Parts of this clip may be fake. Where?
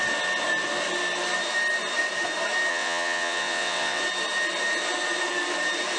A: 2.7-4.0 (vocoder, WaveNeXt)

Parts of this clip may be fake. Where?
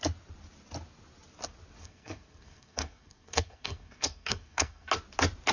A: 1.8-4.9 (codec, SNAC)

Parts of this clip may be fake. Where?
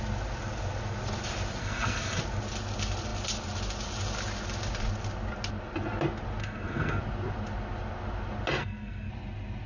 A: 1.6-2.2 (codec, SNAC); 6.4-7.0; 8.6-9.1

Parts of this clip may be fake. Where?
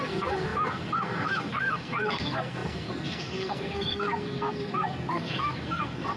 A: 0.0-6.2 (codec, SNAC)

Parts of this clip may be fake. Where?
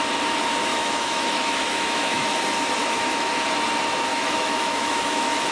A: 0.7-2.4 (autoencoder, DAC-VAE); 2.8-3.3; 4.1-5.5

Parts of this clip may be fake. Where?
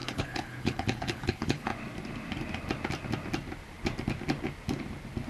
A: 0.0-1.7 (codec, HILCodec)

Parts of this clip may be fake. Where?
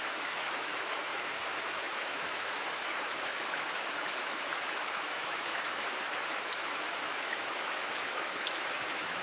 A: 0.0-9.2 (autoencoder, DAC-VAE)